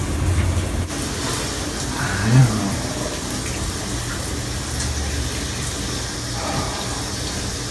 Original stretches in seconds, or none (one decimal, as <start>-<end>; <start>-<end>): 0.0-7.7